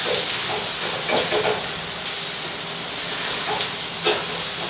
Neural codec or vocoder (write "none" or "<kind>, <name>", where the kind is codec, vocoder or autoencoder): none